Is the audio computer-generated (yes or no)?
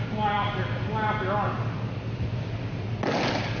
no